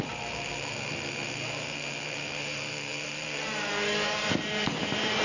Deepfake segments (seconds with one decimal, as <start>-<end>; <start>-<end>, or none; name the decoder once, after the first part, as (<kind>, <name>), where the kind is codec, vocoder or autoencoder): 0.0-5.2 (vocoder, BigVGAN v2)